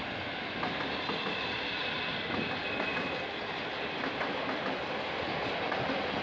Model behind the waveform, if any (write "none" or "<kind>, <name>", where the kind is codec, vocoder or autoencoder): none